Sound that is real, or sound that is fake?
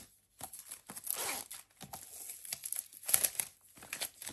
real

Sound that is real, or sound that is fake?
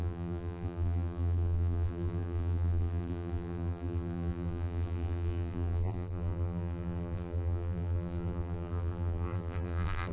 fake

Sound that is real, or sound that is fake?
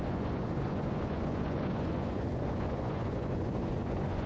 fake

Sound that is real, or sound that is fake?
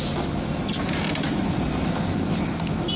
real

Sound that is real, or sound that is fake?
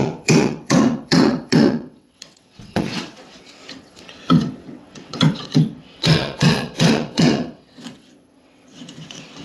fake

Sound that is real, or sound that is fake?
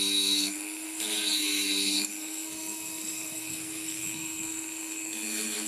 fake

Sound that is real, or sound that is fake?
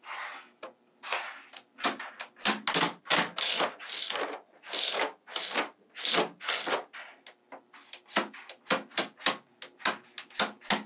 real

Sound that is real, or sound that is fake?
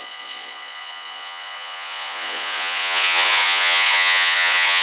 fake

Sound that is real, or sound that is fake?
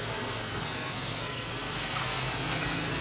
fake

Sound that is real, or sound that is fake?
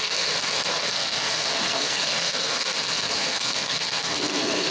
fake